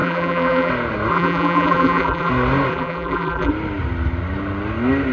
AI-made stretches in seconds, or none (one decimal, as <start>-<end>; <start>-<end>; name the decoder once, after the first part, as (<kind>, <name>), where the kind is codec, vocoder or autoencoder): 0.0-0.7 (vocoder, BigVGAN v2); 1.1-2.3; 2.7-3.5